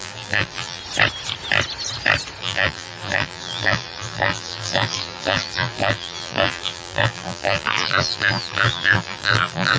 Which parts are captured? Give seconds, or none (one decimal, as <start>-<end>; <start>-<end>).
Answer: 0.8-2.4